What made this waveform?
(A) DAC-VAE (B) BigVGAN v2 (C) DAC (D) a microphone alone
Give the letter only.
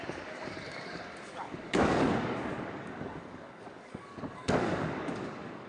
C